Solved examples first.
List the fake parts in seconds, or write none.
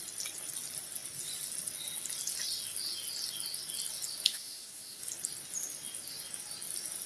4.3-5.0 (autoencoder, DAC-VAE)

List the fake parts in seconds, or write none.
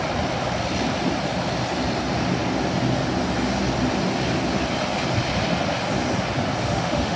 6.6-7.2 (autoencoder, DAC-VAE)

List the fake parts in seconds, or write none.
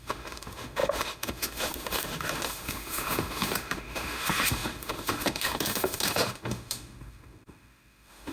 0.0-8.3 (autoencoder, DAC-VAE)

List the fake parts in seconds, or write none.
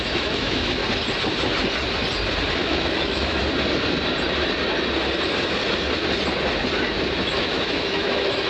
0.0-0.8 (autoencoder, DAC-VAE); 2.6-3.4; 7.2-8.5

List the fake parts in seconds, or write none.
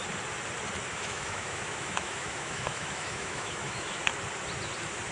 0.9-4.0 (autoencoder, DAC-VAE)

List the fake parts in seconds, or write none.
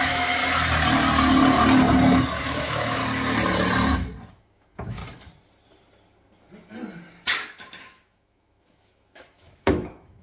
0.0-0.4 (autoencoder, DAC-VAE); 2.4-3.0; 4.3-5.0; 7.8-10.2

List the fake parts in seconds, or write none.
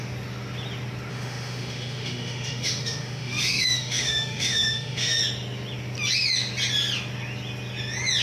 1.1-5.2 (autoencoder, DAC-VAE)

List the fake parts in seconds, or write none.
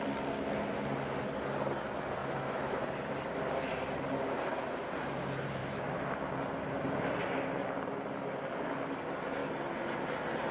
2.2-2.8 (autoencoder, DAC-VAE); 5.6-6.3